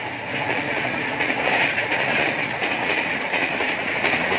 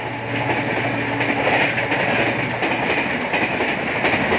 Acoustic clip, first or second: second